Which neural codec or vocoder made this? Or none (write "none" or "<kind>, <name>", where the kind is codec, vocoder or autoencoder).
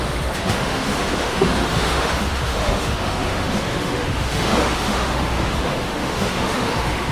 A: autoencoder, DAC-VAE